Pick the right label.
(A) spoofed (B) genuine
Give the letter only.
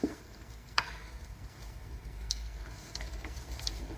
A